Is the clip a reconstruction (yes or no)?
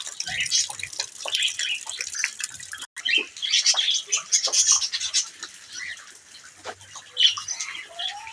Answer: no